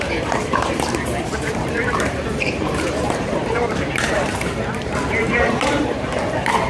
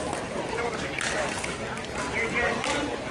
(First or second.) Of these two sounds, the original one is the second